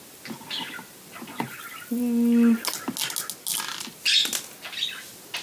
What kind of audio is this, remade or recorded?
recorded